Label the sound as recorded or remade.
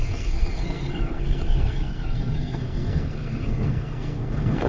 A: remade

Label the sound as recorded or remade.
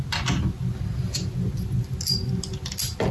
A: recorded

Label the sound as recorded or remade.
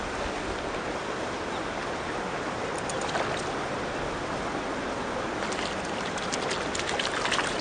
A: recorded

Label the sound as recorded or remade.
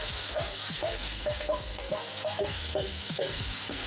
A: remade